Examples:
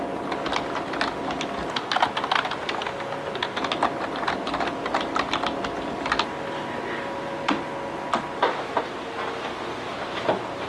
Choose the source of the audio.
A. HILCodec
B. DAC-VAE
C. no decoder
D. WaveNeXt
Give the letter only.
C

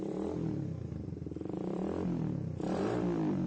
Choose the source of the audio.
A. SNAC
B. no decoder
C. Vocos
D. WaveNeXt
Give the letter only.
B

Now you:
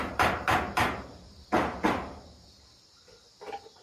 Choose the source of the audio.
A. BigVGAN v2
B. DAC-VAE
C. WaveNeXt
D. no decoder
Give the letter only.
D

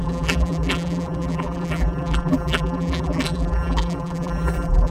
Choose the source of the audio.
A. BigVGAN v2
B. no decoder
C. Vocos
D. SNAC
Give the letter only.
A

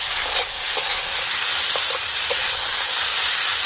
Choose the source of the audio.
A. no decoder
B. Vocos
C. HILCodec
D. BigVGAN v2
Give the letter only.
A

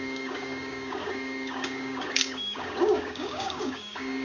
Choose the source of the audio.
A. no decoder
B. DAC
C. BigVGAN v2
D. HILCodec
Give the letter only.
B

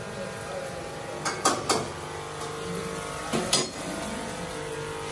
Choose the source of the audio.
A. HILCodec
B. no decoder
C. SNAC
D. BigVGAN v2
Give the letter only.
B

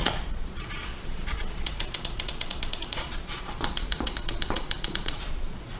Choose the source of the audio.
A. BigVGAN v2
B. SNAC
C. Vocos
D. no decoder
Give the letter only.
C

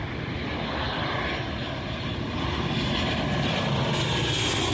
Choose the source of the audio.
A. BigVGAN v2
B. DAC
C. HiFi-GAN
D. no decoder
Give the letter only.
D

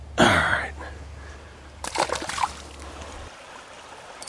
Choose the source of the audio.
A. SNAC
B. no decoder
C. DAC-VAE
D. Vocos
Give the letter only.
B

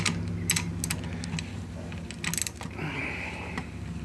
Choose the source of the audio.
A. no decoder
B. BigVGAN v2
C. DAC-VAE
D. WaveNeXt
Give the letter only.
A